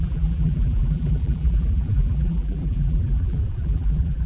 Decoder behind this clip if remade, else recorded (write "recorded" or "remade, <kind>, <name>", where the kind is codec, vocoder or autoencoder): remade, vocoder, BigVGAN v2